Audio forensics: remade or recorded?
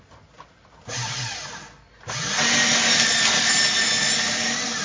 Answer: recorded